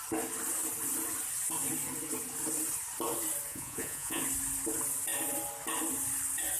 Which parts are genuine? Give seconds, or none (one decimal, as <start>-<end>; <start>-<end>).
0.0-3.5; 4.2-6.6